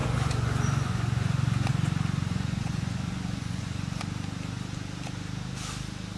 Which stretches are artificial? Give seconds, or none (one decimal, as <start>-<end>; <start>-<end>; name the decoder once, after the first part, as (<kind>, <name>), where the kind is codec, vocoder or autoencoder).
0.0-1.7 (vocoder, Vocos); 2.3-4.0